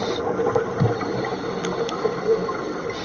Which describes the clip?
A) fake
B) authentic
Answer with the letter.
B